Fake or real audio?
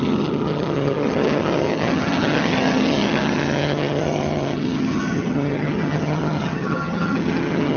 fake